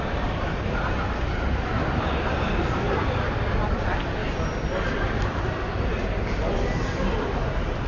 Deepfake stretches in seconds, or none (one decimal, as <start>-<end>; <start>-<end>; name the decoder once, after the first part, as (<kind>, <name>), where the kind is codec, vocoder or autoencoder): 0.0-4.2 (vocoder, BigVGAN v2); 5.0-7.9